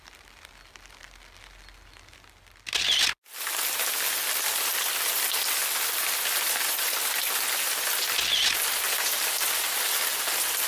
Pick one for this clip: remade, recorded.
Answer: recorded